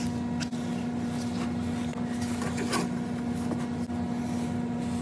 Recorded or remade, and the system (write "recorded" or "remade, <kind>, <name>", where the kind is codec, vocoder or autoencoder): recorded